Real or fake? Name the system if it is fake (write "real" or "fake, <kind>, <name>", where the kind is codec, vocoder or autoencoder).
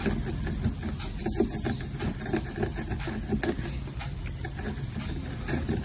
real